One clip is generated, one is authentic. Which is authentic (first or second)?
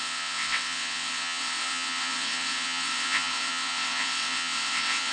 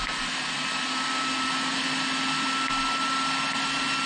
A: second